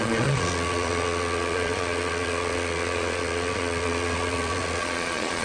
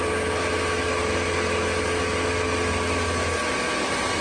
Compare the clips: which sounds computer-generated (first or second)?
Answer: first